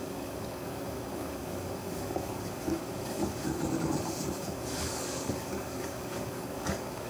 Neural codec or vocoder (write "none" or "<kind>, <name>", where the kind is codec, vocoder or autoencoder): codec, DAC